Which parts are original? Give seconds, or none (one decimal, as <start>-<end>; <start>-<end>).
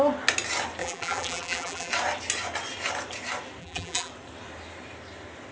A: 0.0-0.8; 1.9-3.6; 4.1-5.5